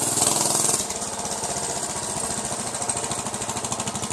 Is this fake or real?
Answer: real